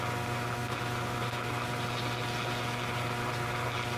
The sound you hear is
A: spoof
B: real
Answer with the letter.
B